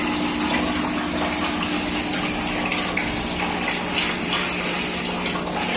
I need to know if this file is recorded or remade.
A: recorded